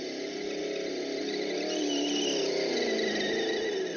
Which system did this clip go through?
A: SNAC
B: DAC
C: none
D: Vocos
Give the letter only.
C